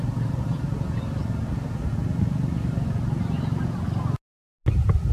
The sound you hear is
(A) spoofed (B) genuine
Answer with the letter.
B